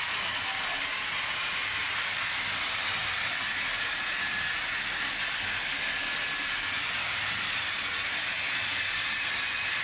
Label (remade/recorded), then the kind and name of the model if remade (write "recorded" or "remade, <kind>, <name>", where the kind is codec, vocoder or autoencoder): recorded